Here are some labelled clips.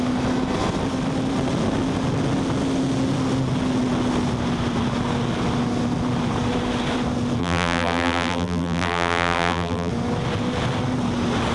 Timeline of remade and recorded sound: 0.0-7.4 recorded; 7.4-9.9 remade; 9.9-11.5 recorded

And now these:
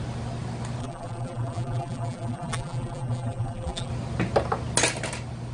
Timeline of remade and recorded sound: 0.0-0.8 recorded; 0.8-3.9 remade; 3.9-5.5 recorded

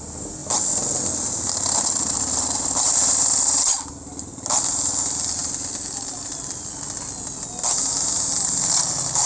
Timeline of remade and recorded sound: 0.0-0.4 recorded; 0.4-5.0 remade; 5.0-5.4 recorded; 5.4-6.7 remade; 6.7-9.3 recorded

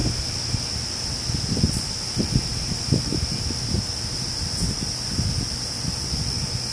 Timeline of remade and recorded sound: 0.0-4.0 recorded; 4.0-6.7 remade

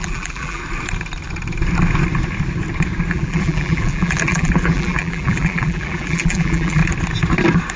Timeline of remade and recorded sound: 0.0-0.6 remade; 0.6-3.1 recorded; 3.1-6.8 remade; 6.8-7.8 recorded

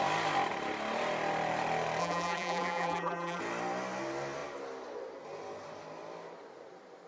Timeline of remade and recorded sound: 0.0-2.0 recorded; 2.0-3.4 remade; 3.4-7.1 recorded

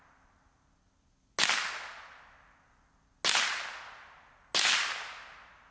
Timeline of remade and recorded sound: 0.0-5.7 recorded